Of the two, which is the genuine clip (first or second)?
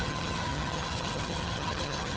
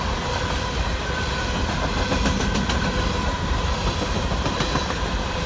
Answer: second